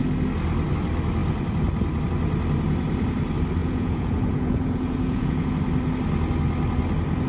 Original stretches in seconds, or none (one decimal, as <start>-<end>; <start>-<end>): 0.0-3.6; 5.5-7.3